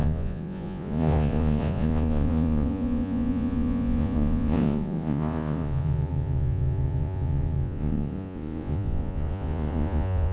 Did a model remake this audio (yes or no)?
yes